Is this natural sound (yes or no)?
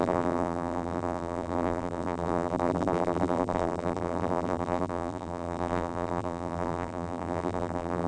no